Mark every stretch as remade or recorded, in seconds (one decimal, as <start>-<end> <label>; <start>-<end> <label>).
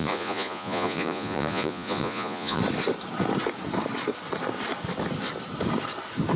0.0-2.6 remade; 2.6-6.4 recorded